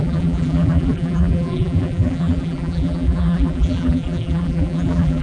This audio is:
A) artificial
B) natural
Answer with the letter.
A